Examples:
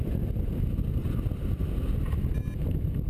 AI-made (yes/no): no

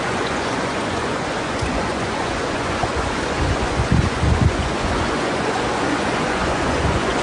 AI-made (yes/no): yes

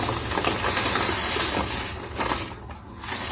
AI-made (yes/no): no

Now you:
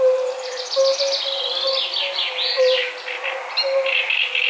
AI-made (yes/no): no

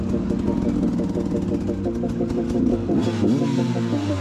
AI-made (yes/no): no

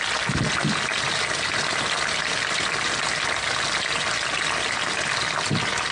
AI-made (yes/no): no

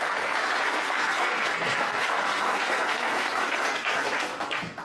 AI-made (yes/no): yes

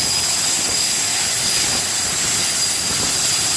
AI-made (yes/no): no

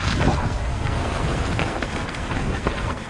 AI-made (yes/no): yes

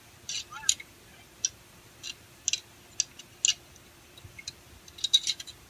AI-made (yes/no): no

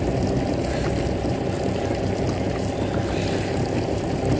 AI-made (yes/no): no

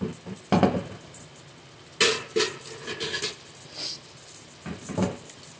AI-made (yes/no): no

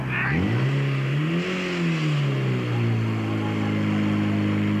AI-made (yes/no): no